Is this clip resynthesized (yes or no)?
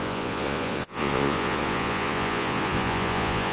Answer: yes